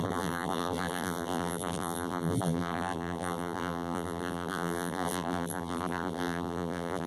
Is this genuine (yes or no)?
no